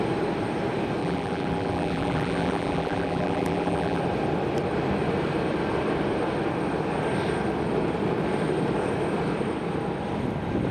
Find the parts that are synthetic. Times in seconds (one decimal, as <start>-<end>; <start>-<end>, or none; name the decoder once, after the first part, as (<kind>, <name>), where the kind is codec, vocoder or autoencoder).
1.0-4.0 (vocoder, BigVGAN v2)